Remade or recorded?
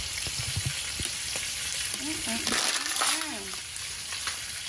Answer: recorded